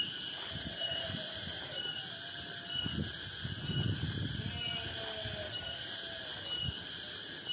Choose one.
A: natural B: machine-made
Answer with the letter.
A